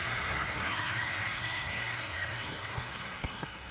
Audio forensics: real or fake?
fake